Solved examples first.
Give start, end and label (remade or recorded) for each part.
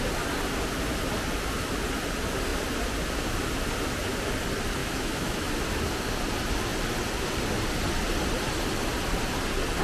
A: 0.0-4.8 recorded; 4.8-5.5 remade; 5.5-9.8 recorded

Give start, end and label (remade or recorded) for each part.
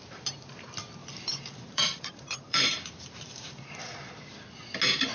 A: 0.0-1.0 recorded; 1.0-4.1 remade; 4.1-5.1 recorded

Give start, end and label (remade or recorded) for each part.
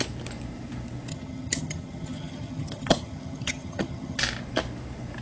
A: 0.0-1.1 recorded; 1.1-4.2 remade; 4.2-5.2 recorded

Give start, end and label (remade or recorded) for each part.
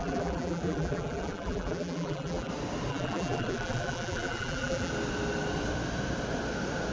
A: 0.0-2.5 remade; 2.5-2.9 recorded; 2.9-4.9 remade; 4.9-6.9 recorded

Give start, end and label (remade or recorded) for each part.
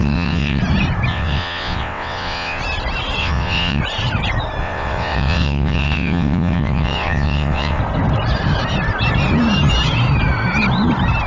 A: 0.0-0.6 remade; 0.6-1.1 recorded; 1.1-2.6 remade; 2.6-3.2 recorded; 3.2-3.8 remade; 3.8-4.6 recorded; 4.6-7.8 remade; 7.8-11.3 recorded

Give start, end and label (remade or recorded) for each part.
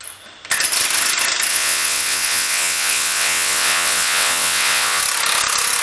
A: 0.0-1.5 recorded; 1.5-5.0 remade; 5.0-5.8 recorded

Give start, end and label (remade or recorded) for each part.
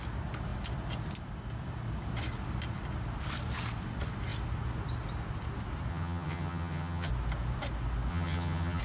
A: 0.0-5.9 recorded; 5.9-7.1 remade; 7.1-8.1 recorded; 8.1-8.8 remade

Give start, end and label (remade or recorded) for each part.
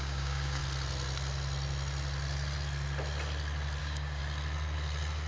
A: 0.0-0.6 remade; 0.6-3.8 recorded; 3.8-4.2 remade; 4.2-5.3 recorded